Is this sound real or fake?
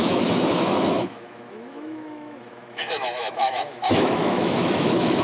fake